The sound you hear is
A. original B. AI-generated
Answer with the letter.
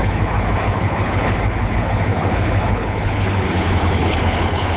B